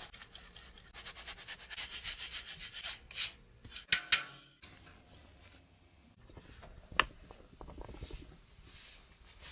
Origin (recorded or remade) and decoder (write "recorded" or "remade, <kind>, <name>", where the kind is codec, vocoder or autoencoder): recorded